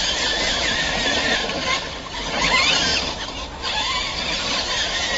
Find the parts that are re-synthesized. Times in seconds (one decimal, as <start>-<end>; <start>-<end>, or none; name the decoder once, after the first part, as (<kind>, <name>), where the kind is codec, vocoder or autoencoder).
none